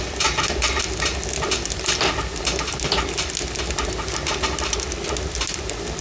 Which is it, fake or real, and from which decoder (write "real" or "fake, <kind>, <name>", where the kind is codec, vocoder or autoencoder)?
real